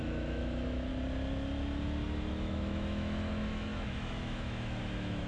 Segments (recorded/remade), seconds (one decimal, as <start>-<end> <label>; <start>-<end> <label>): 0.0-0.9 remade; 0.9-2.3 recorded; 2.3-5.3 remade